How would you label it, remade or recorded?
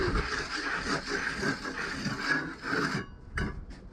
recorded